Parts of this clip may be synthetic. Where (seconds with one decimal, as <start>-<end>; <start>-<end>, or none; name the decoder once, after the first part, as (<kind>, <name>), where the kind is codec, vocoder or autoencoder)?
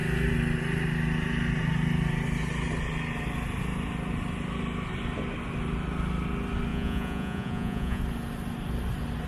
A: 6.7-8.0 (vocoder, Vocos)